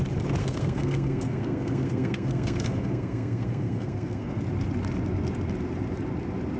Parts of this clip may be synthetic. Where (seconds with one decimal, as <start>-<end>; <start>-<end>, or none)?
0.4-4.4